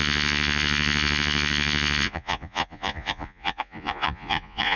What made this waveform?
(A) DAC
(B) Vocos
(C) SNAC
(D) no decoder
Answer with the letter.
B